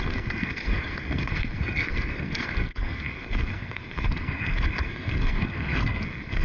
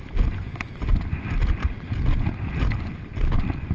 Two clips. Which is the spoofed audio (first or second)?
first